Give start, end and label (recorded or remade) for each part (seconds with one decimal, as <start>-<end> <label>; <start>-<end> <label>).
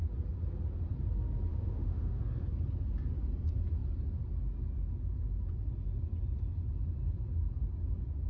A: 0.0-1.5 recorded; 1.5-2.2 remade; 2.2-8.3 recorded